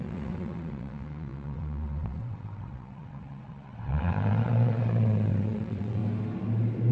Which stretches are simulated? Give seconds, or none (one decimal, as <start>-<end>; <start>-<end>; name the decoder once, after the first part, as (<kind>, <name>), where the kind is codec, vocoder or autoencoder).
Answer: 0.0-6.0 (vocoder, WaveNeXt)